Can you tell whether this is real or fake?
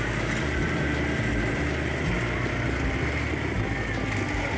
real